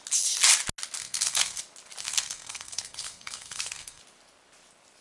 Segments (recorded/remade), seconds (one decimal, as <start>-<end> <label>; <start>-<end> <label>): 0.0-1.0 recorded; 1.0-1.6 remade; 1.6-2.0 recorded; 2.0-4.0 remade; 4.0-5.0 recorded